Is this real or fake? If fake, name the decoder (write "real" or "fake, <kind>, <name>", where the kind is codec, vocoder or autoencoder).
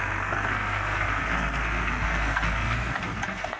fake, codec, SNAC